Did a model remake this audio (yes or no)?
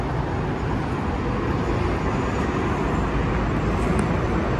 no